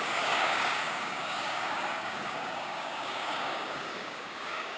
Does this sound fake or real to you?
fake